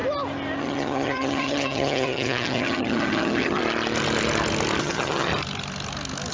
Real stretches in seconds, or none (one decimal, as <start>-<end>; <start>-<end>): 0.0-0.6; 3.6-4.8; 5.3-6.3